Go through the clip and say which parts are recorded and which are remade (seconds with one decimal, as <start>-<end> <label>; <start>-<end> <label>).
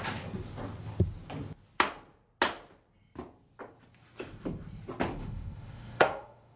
0.0-5.2 recorded; 5.2-6.6 remade